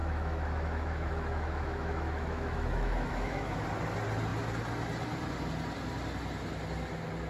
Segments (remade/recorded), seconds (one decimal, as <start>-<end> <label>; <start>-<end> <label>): 0.0-3.6 remade; 3.6-7.3 recorded